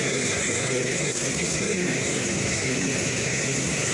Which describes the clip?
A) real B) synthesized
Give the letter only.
B